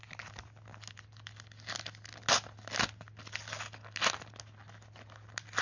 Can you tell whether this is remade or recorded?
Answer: recorded